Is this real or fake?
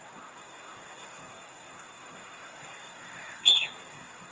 fake